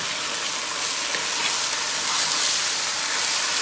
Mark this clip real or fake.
real